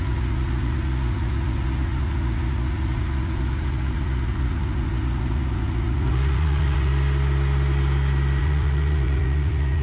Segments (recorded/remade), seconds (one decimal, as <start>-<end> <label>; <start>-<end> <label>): 0.0-6.9 remade; 6.9-8.4 recorded; 8.4-9.8 remade